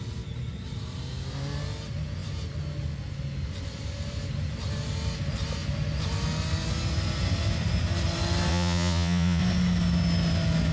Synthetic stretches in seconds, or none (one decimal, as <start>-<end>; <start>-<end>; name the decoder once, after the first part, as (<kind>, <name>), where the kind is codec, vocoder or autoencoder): 8.5-9.4 (vocoder, Vocos)